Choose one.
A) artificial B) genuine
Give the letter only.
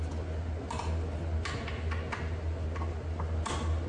B